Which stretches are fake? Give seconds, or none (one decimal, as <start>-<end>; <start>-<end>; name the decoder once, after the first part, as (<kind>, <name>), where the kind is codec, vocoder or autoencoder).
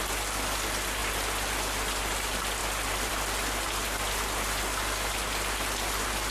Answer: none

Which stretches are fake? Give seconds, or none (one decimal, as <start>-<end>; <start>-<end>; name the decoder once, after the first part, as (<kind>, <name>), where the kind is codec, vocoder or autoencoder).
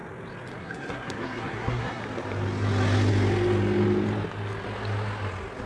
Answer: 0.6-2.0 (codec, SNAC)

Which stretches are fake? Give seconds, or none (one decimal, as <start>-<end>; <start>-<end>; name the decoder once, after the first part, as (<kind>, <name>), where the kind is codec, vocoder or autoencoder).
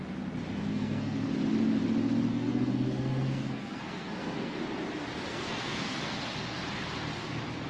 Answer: 0.7-1.3 (codec, SNAC); 2.3-4.6; 5.3-6.2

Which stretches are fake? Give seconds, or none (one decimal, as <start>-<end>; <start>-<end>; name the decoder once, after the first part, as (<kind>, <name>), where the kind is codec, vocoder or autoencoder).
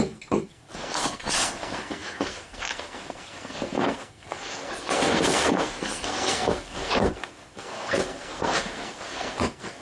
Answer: 0.0-9.8 (codec, SNAC)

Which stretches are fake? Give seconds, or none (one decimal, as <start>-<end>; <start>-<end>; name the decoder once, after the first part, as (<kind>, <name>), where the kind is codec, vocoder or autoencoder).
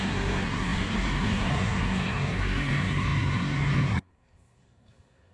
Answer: 0.0-5.3 (codec, SNAC)